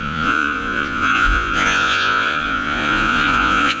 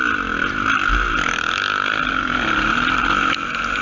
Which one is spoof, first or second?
first